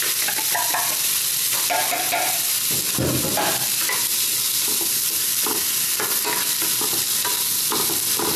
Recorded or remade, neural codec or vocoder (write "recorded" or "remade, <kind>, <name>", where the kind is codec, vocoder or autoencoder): recorded